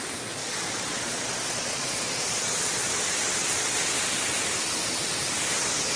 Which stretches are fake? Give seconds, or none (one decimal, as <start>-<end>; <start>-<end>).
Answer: 0.4-2.9; 3.4-4.0